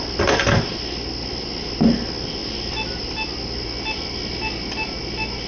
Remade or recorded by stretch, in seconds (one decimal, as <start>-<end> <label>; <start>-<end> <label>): 0.0-5.5 recorded